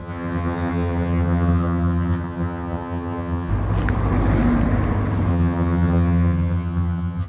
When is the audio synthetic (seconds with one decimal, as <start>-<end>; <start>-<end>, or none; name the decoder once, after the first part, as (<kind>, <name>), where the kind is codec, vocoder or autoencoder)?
0.0-3.5 (vocoder, HiFi-GAN); 5.3-7.3

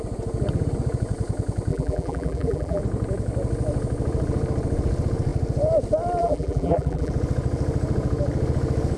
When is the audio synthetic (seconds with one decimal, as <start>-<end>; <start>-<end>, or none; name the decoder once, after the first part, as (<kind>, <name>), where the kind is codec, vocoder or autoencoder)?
1.7-2.8 (vocoder, BigVGAN v2); 6.2-7.1